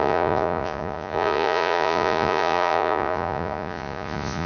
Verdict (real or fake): fake